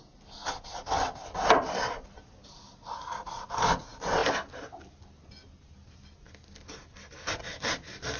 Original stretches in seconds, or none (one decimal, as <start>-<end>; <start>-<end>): 0.0-8.2